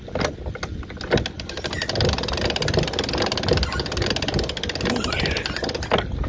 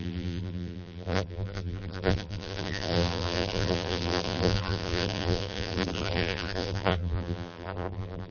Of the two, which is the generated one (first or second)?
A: second